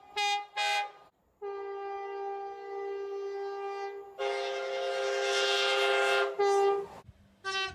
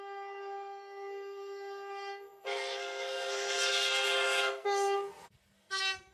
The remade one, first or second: second